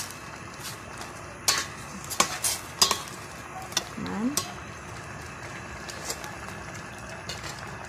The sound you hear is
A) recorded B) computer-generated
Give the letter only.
A